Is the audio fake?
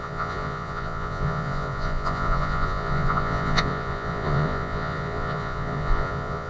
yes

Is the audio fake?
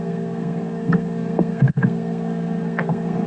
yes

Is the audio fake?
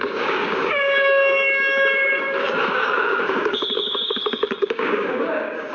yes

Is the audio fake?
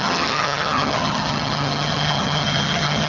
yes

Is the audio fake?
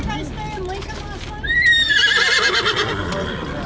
no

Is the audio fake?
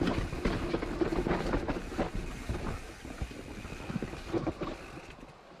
no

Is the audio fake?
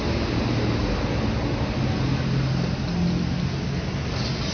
no